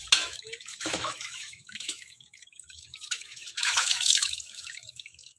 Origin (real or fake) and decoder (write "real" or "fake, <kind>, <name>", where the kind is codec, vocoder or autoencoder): fake, autoencoder, DAC-VAE